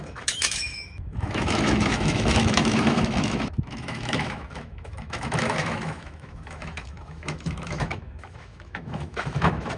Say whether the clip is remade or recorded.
remade